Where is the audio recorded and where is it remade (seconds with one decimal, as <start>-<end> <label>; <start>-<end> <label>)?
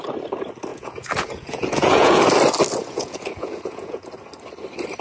0.0-0.7 recorded; 0.7-2.2 remade; 2.2-2.8 recorded; 2.8-4.1 remade; 4.1-5.0 recorded